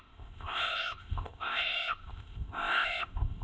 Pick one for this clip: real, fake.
fake